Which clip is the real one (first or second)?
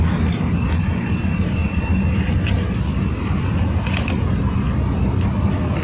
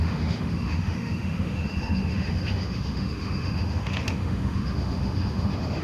first